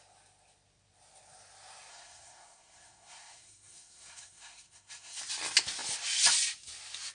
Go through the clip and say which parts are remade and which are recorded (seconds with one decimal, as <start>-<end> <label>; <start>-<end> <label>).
0.0-1.9 recorded; 1.9-5.2 remade; 5.2-7.1 recorded